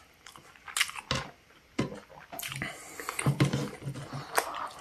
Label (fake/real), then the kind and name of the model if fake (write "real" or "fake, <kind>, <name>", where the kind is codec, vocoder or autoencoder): real